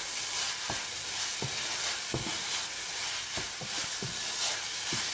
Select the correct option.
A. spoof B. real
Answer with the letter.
B